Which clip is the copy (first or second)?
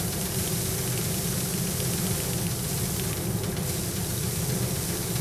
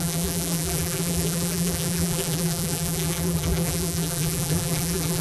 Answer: second